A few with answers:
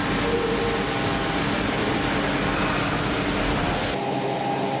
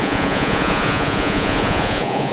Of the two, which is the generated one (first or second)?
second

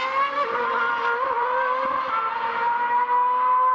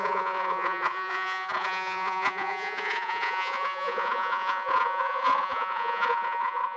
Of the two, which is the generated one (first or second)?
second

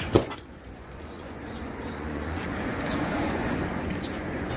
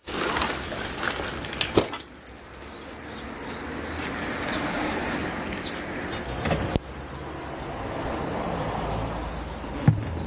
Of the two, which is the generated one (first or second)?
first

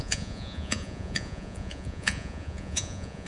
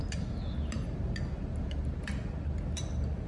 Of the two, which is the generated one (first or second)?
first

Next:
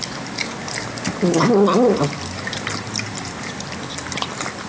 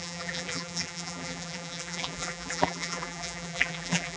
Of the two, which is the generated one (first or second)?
second